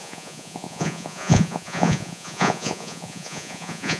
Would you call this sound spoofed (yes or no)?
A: yes